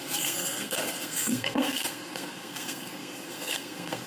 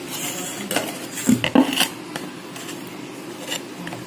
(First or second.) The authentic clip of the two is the second